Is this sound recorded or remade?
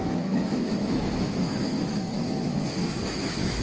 remade